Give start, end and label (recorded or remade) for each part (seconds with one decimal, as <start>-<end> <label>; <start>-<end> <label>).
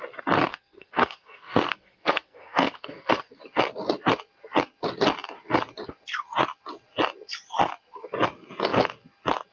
0.0-0.5 recorded; 0.5-3.4 remade; 3.4-9.5 recorded